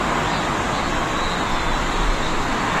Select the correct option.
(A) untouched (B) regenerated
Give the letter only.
A